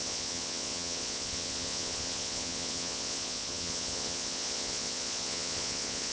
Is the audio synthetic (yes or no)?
yes